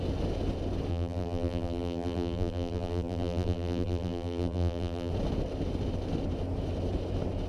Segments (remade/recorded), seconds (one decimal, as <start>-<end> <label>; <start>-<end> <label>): 0.0-0.9 recorded; 0.9-5.1 remade; 5.1-7.5 recorded